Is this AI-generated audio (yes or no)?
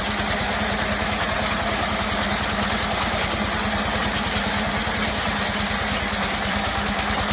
no